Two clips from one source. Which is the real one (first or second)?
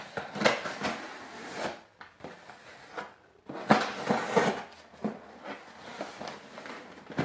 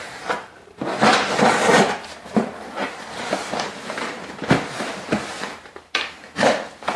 first